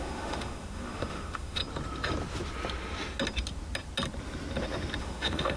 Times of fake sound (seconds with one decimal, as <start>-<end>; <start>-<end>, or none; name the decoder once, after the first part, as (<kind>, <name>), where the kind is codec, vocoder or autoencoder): 0.0-1.6 (autoencoder, DAC-VAE); 5.0-5.6